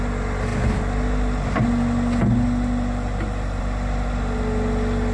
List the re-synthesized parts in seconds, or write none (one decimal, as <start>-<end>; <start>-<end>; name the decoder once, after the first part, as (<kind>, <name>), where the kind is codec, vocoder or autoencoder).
none